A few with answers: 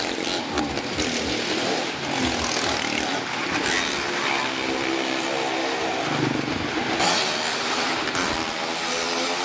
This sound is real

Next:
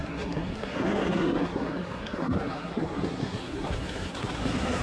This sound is fake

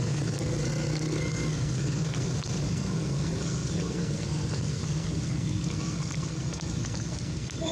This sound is fake